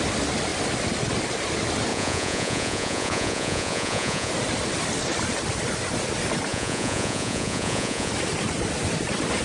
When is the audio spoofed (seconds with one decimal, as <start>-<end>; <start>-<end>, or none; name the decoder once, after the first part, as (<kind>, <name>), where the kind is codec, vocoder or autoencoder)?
1.9-4.3 (vocoder, Vocos); 6.5-8.1